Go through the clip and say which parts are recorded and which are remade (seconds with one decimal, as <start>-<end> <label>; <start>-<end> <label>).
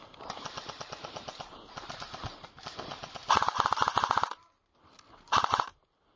0.0-6.2 recorded